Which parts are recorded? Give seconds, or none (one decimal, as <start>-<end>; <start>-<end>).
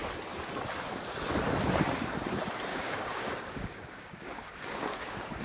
0.0-2.7